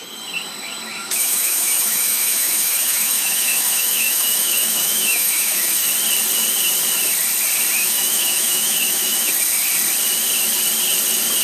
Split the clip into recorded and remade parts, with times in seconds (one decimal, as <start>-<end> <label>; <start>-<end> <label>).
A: 0.0-0.9 recorded; 0.9-5.9 remade; 5.9-7.8 recorded; 7.8-9.3 remade; 9.3-11.4 recorded